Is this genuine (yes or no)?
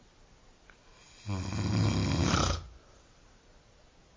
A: yes